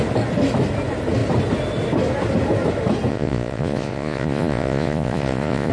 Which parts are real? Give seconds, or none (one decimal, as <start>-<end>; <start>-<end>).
0.0-3.1